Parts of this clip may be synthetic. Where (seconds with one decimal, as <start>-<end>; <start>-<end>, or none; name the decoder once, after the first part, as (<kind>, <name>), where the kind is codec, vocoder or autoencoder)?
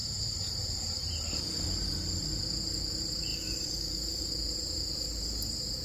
0.0-2.4 (vocoder, BigVGAN v2); 3.3-4.3